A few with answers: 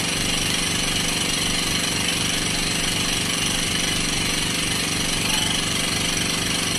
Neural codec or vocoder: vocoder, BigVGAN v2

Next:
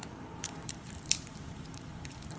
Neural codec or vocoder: vocoder, BigVGAN v2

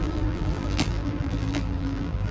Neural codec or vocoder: vocoder, BigVGAN v2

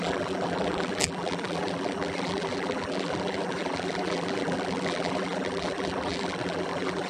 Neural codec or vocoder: vocoder, BigVGAN v2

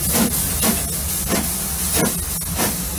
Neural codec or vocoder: none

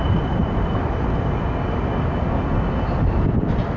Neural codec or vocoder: none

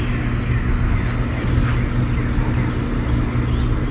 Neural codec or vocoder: none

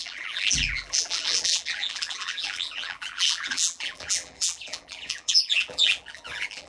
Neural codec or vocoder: vocoder, BigVGAN v2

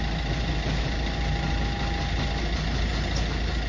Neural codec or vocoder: none